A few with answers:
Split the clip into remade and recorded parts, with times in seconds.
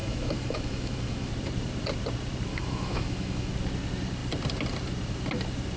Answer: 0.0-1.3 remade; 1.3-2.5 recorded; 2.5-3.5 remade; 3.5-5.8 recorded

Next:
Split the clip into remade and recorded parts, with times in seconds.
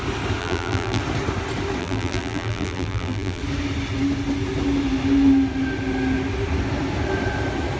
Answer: 0.0-0.4 recorded; 0.4-1.0 remade; 1.0-1.8 recorded; 1.8-3.4 remade; 3.4-7.8 recorded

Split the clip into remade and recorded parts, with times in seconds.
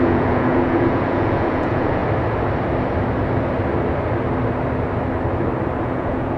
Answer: 0.0-2.0 remade; 2.0-5.8 recorded; 5.8-6.4 remade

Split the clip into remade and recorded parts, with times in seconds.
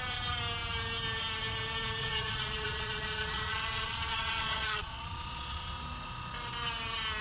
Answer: 0.0-2.0 recorded; 2.0-5.6 remade; 5.6-7.2 recorded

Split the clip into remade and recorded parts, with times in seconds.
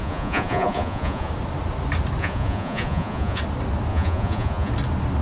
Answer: 0.0-1.3 remade; 1.3-2.2 recorded; 2.2-3.4 remade; 3.4-3.9 recorded; 3.9-4.7 remade; 4.7-5.2 recorded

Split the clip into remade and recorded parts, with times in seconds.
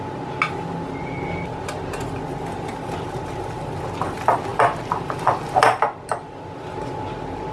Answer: 0.0-7.5 recorded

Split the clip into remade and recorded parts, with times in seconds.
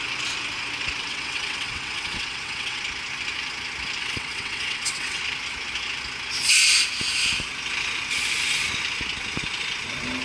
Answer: 0.0-1.0 recorded; 1.0-2.8 remade; 2.8-4.0 recorded; 4.0-5.2 remade; 5.2-10.2 recorded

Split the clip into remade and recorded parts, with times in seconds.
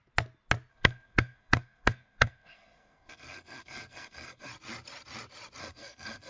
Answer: 0.0-0.7 recorded; 0.7-4.5 remade; 4.5-5.6 recorded; 5.6-6.3 remade